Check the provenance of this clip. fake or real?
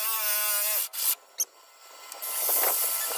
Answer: real